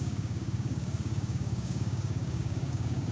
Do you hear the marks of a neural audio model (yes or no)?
yes